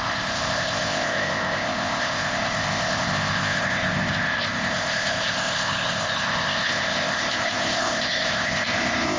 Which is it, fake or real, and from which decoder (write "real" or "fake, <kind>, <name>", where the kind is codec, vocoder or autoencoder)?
fake, codec, ZipCodec